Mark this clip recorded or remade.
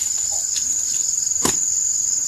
recorded